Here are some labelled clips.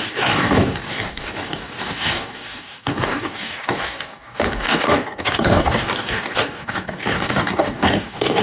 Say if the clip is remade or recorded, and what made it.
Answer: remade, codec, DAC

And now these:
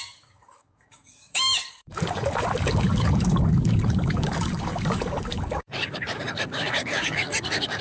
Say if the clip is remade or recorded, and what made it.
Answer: remade, codec, DAC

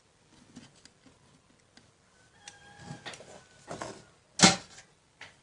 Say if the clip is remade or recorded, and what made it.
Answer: recorded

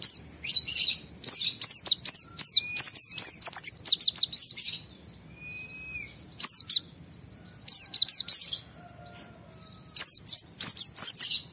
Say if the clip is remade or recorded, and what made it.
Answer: recorded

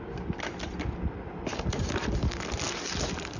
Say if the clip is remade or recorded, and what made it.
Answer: recorded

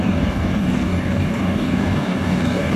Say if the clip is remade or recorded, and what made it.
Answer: remade, codec, DAC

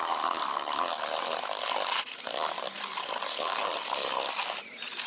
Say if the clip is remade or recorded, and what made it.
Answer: recorded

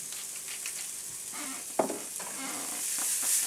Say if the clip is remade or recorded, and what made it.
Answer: recorded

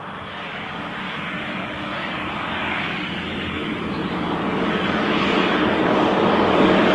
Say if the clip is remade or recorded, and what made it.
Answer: remade, codec, DAC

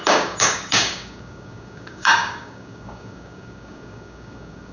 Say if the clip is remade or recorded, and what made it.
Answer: remade, codec, DAC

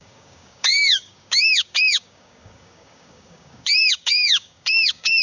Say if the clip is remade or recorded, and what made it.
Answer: remade, codec, DAC